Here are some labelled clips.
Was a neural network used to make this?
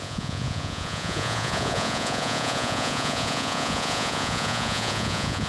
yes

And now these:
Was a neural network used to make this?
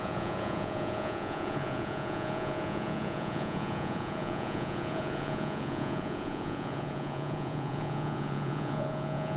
yes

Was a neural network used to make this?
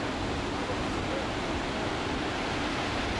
no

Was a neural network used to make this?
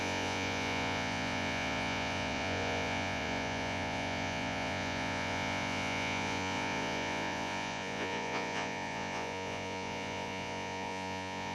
yes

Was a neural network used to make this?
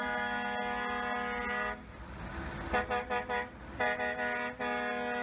no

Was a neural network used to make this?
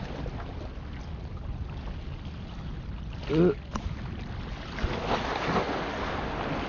no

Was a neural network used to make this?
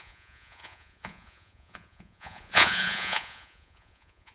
yes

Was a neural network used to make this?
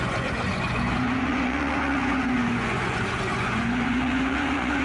yes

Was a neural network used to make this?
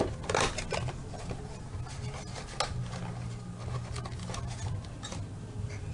no